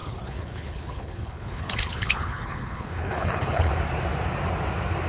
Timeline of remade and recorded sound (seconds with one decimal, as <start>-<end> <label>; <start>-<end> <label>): 0.0-3.7 remade; 3.7-5.1 recorded